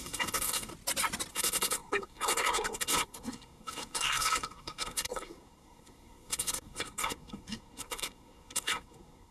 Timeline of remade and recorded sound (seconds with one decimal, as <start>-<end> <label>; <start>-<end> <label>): 0.0-0.7 remade; 0.7-1.3 recorded; 1.3-9.3 remade